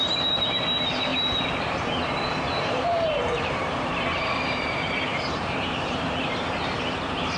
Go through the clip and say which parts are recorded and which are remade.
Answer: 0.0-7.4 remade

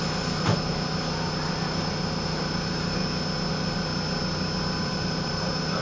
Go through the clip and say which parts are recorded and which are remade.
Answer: 0.0-3.0 remade; 3.0-3.5 recorded; 3.5-3.9 remade; 3.9-4.8 recorded; 4.8-5.8 remade

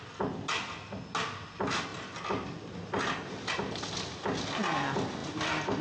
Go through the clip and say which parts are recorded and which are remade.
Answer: 0.0-5.8 recorded

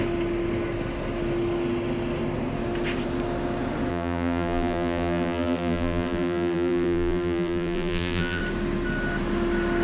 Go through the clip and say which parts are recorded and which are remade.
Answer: 0.0-3.9 recorded; 3.9-8.4 remade; 8.4-9.8 recorded

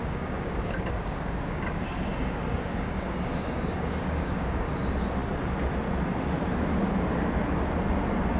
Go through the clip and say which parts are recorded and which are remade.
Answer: 0.0-4.7 remade; 4.7-8.4 recorded

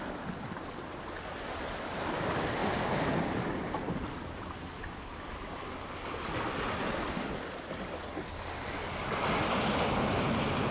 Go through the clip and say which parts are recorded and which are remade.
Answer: 0.0-10.7 recorded

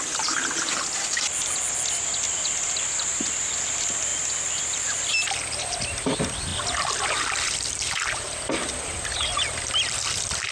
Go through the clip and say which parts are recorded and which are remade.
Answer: 0.0-10.5 recorded